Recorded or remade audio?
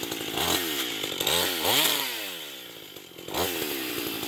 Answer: recorded